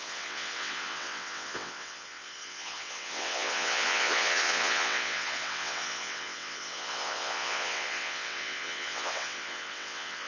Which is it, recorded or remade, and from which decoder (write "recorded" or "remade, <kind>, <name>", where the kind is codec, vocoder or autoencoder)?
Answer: remade, vocoder, WaveNeXt